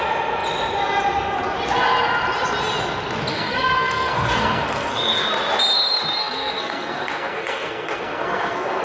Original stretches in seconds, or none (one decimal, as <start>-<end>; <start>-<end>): 0.0-3.3; 5.3-6.2